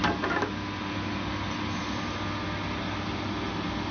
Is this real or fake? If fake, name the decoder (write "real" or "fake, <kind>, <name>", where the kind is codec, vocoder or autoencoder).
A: real